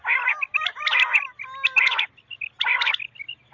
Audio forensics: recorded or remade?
recorded